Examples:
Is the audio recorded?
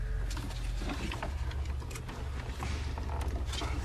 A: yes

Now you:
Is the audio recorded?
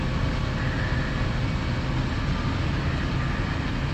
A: yes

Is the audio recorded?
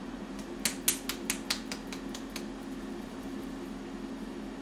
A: yes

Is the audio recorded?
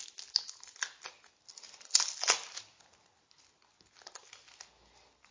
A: yes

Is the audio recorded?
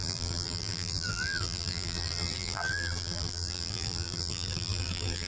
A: no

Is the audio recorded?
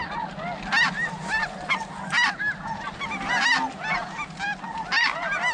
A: yes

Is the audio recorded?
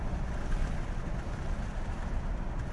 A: yes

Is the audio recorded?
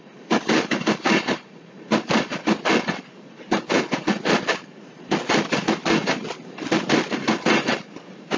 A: no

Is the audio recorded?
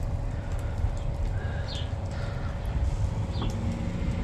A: yes